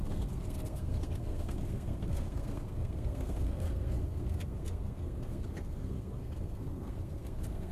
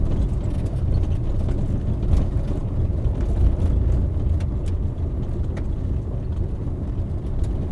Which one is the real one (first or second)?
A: second